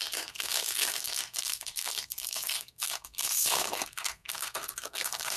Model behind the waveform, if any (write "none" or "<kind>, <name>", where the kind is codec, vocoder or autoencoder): codec, SNAC